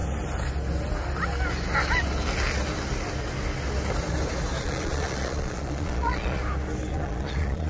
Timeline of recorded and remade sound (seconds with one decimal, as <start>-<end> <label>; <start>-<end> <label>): 0.0-4.6 recorded; 4.6-6.4 remade; 6.4-6.9 recorded; 6.9-7.7 remade

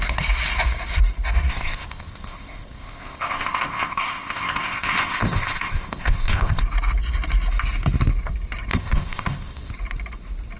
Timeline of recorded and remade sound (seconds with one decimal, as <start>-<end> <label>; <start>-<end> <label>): 0.0-1.5 recorded; 1.5-6.6 remade; 6.6-8.7 recorded; 8.7-9.7 remade; 9.7-10.6 recorded

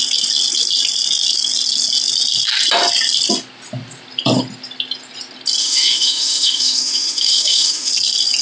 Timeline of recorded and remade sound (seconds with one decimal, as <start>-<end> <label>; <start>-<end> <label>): 0.0-5.6 recorded; 5.6-7.9 remade; 7.9-8.4 recorded